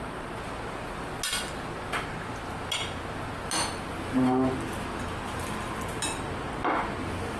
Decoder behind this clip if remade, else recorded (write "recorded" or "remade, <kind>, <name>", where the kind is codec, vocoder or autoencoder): recorded